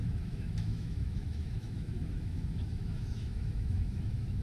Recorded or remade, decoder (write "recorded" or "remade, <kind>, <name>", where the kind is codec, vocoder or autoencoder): remade, autoencoder, DAC-VAE